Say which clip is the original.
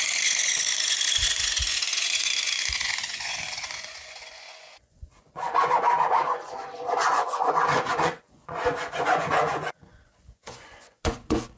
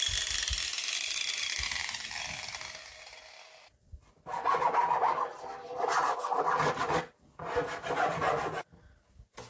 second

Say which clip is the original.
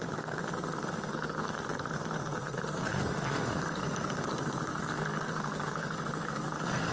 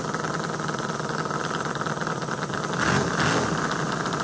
second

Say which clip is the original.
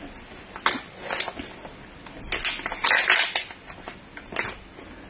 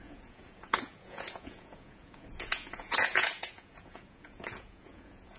first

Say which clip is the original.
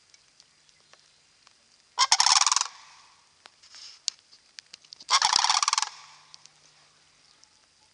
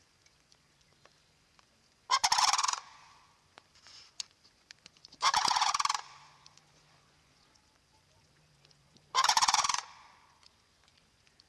first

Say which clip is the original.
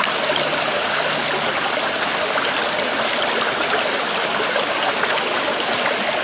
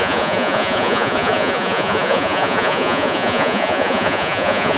first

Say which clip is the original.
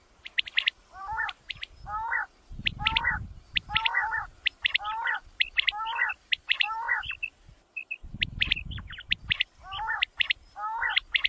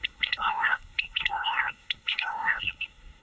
first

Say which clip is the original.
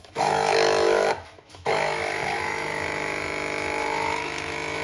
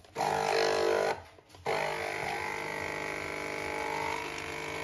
second